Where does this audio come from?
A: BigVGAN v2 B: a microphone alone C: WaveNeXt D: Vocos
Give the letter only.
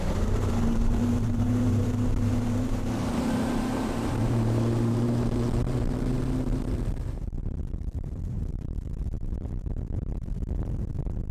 A